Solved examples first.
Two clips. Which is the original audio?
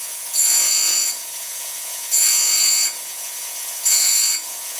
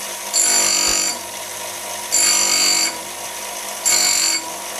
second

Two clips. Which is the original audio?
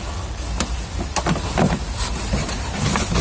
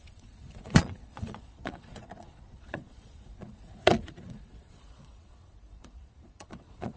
first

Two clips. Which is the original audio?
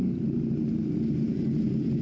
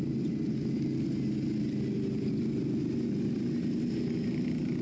second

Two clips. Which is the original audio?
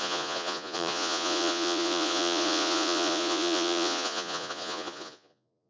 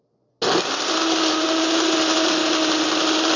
second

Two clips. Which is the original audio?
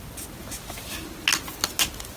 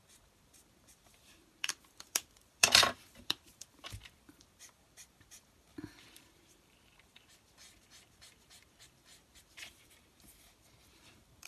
first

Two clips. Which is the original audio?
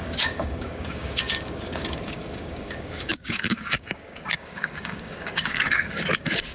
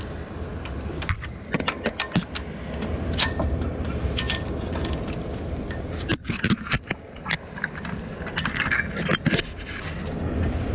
second